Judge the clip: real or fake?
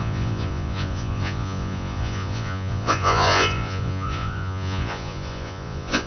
fake